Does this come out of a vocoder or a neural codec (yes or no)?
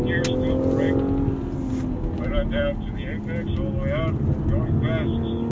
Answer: no